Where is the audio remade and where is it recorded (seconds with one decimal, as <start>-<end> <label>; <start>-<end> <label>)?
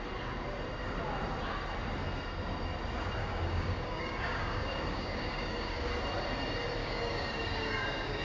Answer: 0.0-3.2 recorded; 3.2-5.9 remade; 5.9-6.8 recorded; 6.8-8.2 remade